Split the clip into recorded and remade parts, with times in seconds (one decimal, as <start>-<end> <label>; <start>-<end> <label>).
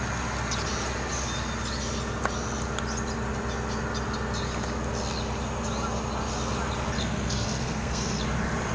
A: 0.0-7.0 recorded; 7.0-8.2 remade; 8.2-8.7 recorded